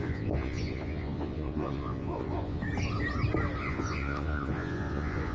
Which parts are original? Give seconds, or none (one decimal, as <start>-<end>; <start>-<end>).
2.6-3.6